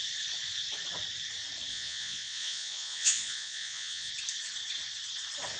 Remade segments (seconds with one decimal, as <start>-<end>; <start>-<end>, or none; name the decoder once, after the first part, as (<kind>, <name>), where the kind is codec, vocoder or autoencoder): 1.7-4.1 (vocoder, Vocos)